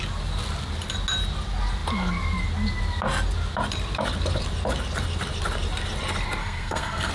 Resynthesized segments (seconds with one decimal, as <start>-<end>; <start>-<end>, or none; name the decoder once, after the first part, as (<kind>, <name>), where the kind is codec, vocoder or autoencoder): 6.4-7.1 (codec, SNAC)